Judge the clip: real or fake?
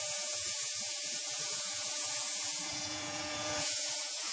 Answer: fake